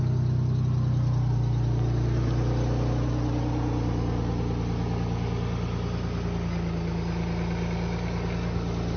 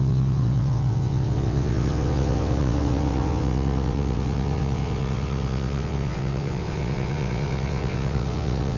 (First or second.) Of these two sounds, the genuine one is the first